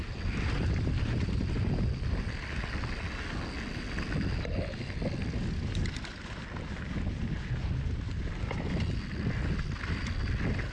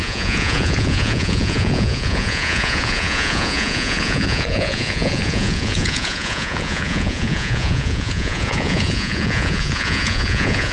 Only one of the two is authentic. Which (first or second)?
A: first